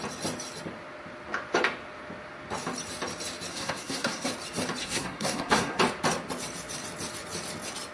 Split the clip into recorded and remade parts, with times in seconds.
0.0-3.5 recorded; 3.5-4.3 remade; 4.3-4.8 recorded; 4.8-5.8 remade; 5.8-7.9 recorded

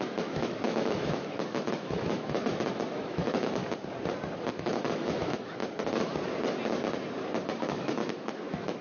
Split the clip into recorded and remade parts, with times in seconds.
0.0-3.6 remade; 3.6-4.5 recorded; 4.5-5.6 remade; 5.6-7.6 recorded; 7.6-8.8 remade

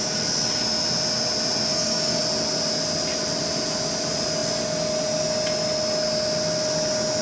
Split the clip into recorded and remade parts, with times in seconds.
0.0-1.7 recorded; 1.7-2.2 remade; 2.2-7.2 recorded

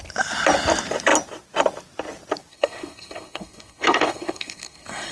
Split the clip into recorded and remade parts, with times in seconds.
0.0-2.5 recorded; 2.5-5.1 remade

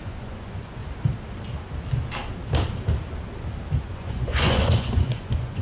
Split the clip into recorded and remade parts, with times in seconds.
0.0-0.8 remade; 0.8-3.8 recorded; 3.8-5.6 remade